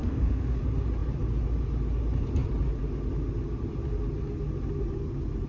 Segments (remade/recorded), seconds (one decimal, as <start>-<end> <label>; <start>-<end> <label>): 0.0-0.6 remade; 0.6-5.5 recorded